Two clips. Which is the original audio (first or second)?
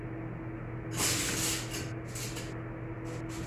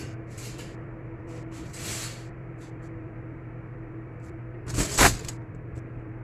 first